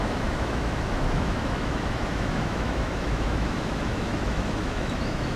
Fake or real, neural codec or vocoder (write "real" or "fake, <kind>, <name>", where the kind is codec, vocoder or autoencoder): fake, autoencoder, DAC-VAE